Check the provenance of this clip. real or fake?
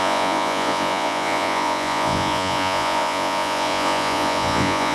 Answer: fake